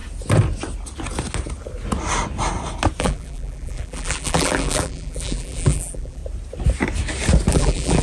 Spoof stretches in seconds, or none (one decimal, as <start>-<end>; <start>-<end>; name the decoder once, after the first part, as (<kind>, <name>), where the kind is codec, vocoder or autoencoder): 3.0-6.2 (vocoder, BigVGAN v2); 7.5-8.0